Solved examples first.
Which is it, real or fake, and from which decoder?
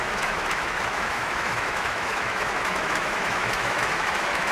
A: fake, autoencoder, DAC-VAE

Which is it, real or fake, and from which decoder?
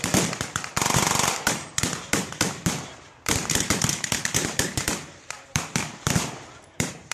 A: fake, vocoder, BigVGAN v2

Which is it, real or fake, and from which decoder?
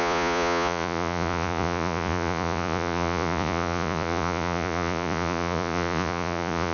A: fake, vocoder, Vocos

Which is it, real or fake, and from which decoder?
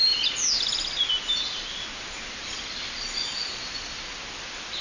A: real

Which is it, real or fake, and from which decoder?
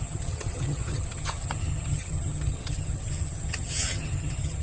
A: fake, vocoder, HiFi-GAN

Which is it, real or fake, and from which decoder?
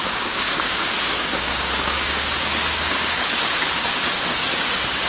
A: fake, codec, DAC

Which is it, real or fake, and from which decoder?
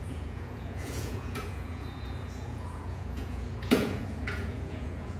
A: fake, vocoder, Vocos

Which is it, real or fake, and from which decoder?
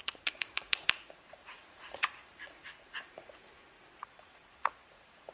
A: fake, vocoder, Vocos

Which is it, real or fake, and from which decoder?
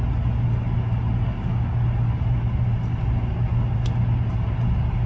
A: real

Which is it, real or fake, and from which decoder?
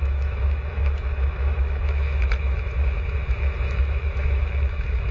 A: fake, autoencoder, DAC-VAE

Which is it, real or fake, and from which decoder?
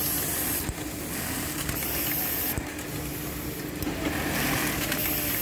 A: real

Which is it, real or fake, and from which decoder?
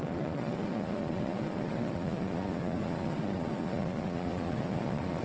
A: fake, vocoder, Vocos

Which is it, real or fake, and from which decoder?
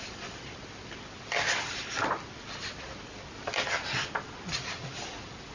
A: real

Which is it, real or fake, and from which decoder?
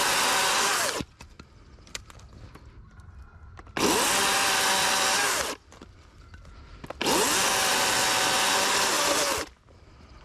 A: real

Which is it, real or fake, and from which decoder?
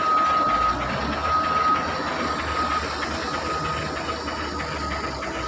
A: real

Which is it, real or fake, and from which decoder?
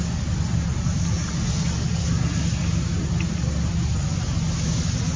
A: real